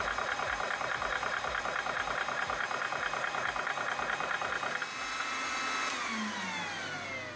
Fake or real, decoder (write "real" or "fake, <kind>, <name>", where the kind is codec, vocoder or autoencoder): real